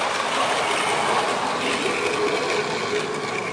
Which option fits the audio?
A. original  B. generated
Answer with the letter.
A